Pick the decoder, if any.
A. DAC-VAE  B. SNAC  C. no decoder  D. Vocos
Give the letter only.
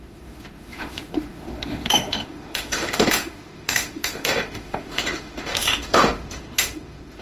A